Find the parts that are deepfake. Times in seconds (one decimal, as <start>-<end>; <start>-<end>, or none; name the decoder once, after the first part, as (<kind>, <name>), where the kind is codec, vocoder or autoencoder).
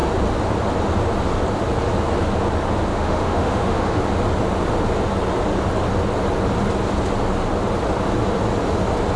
2.9-4.0 (autoencoder, DAC-VAE)